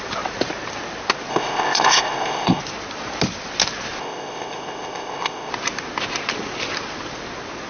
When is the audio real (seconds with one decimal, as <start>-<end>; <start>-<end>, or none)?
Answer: 0.0-1.3; 2.6-4.0; 5.5-7.7